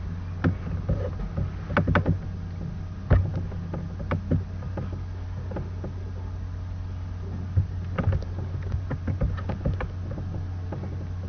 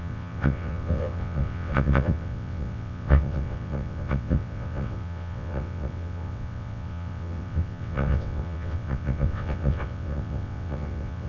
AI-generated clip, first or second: second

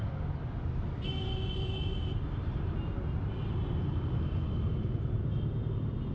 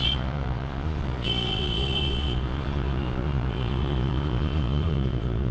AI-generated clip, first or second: second